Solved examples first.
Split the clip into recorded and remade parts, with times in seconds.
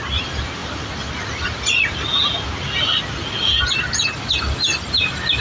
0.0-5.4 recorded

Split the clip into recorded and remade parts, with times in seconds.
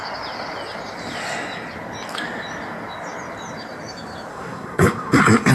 0.0-4.3 recorded; 4.3-5.5 remade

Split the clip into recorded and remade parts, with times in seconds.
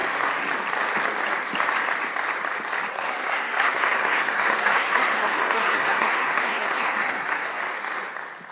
0.0-2.9 recorded; 2.9-7.6 remade; 7.6-8.5 recorded